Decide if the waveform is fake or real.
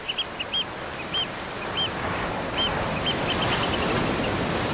real